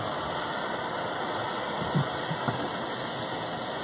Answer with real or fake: real